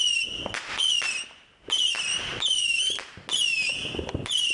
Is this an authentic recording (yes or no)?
yes